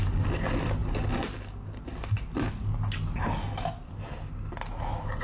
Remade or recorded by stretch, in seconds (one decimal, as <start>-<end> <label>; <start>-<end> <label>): 0.0-5.2 recorded

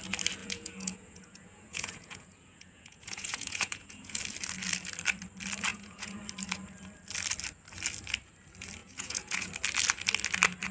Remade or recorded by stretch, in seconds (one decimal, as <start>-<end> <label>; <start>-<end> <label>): 0.0-0.4 recorded; 0.4-4.2 remade; 4.2-5.7 recorded; 5.7-6.2 remade; 6.2-8.8 recorded; 8.8-9.5 remade; 9.5-10.7 recorded

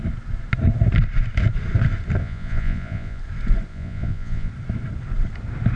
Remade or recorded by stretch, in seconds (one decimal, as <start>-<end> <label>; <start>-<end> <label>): 0.0-2.2 recorded; 2.2-3.2 remade; 3.2-3.7 recorded; 3.7-4.5 remade; 4.5-5.8 recorded

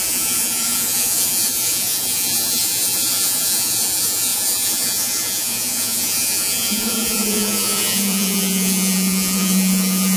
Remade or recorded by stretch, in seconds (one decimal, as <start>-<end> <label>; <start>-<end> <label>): 0.0-10.2 remade

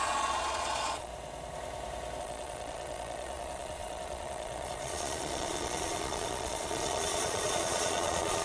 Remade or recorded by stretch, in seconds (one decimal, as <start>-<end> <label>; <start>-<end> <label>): 0.0-1.1 remade; 1.1-2.2 recorded; 2.2-8.4 remade